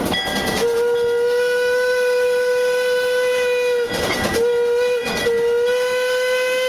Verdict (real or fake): real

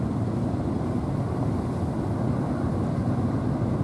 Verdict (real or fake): real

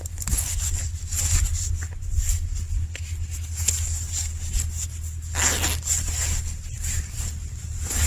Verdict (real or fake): real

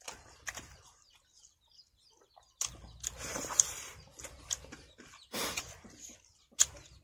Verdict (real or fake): real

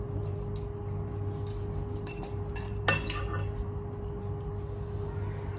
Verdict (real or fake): real